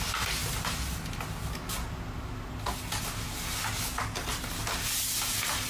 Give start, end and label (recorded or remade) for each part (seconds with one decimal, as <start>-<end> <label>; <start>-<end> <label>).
0.0-5.7 recorded